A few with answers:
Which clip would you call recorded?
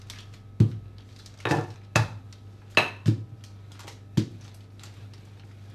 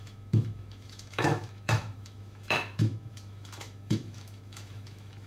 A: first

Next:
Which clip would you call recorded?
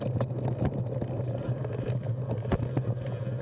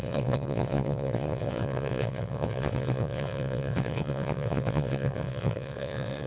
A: first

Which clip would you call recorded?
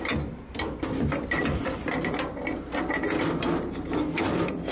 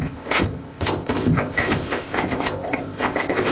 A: first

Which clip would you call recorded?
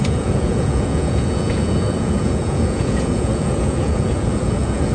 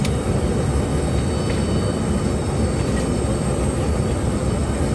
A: second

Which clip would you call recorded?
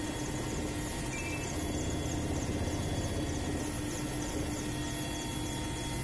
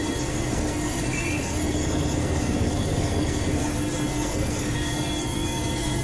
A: first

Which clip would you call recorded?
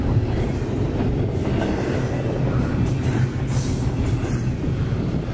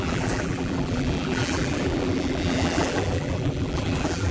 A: first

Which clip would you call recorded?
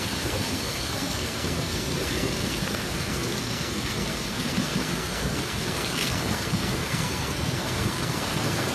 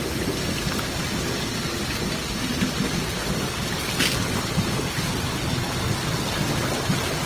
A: second